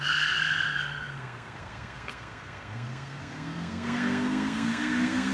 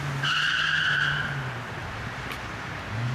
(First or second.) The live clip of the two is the second